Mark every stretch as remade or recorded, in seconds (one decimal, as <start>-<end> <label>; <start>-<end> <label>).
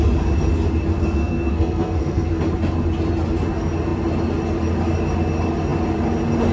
0.0-1.0 recorded; 1.0-2.4 remade; 2.4-6.5 recorded